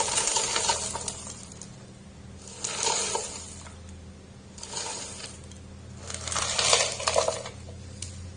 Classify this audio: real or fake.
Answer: real